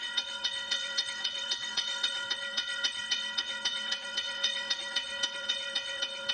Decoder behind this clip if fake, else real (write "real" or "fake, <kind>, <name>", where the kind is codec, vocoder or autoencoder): fake, vocoder, WaveNeXt